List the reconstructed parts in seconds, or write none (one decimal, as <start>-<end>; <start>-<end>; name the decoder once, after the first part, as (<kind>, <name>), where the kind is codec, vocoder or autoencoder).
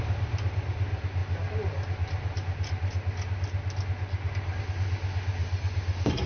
5.4-6.3 (vocoder, BigVGAN v2)